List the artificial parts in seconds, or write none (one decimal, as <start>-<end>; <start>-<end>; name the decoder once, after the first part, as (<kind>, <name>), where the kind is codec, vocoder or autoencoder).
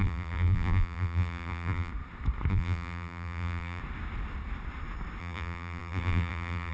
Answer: 0.0-1.9 (vocoder, BigVGAN v2); 2.5-3.8; 5.2-6.7